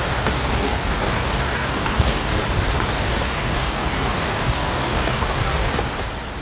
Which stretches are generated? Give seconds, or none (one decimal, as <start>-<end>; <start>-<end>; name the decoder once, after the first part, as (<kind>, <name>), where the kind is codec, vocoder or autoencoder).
0.0-2.4 (codec, DAC); 2.9-5.7